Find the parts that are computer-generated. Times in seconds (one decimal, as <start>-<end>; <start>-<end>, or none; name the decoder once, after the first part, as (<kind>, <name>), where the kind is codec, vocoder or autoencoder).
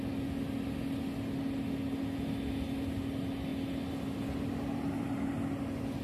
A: none